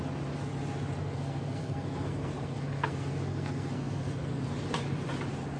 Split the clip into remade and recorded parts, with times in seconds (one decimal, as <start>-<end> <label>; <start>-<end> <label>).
0.0-1.0 recorded; 1.0-4.4 remade; 4.4-5.6 recorded